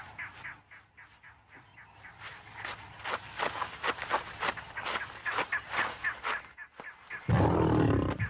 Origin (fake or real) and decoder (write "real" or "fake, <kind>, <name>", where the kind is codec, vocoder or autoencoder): real